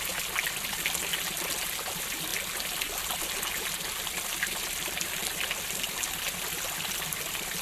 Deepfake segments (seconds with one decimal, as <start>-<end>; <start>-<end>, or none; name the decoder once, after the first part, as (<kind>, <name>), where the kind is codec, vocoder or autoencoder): none